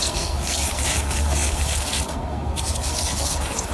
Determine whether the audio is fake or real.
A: fake